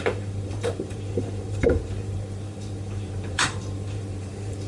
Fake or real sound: fake